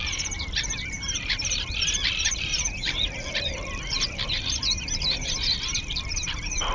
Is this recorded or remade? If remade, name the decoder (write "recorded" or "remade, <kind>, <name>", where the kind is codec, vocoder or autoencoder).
remade, vocoder, BigVGAN v2